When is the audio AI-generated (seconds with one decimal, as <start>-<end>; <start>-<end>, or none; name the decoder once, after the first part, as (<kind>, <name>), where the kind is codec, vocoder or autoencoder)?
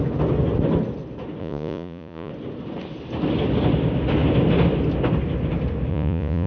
1.4-2.3 (vocoder, Vocos); 5.9-6.5